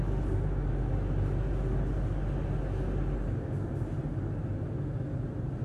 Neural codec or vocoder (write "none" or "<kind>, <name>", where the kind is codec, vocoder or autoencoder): none